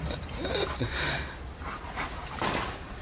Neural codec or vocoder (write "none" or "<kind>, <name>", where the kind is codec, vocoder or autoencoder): vocoder, BigVGAN v2